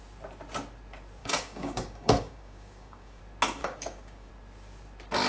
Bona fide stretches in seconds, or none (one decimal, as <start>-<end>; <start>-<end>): 0.0-1.2; 3.2-3.6; 4.3-5.3